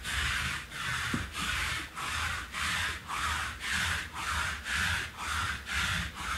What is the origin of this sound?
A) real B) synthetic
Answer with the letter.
A